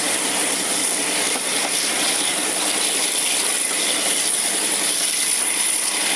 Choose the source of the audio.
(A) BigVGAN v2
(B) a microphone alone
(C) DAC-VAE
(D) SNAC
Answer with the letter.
A